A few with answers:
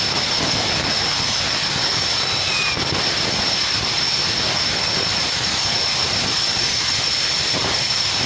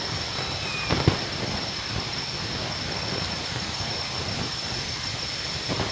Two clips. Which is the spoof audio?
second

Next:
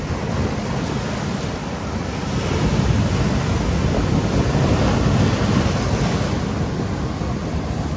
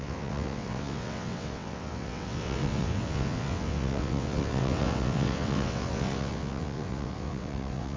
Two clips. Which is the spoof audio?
second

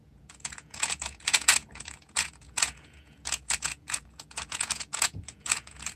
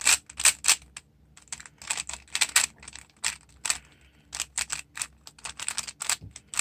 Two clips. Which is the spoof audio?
first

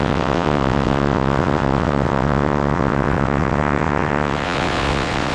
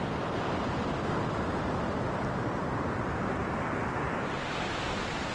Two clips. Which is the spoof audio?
first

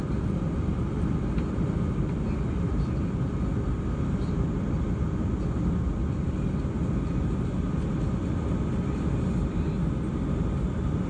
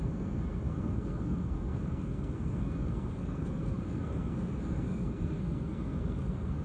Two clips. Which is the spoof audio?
second